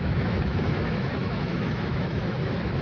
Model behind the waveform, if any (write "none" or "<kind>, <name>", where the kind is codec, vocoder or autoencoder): autoencoder, DAC-VAE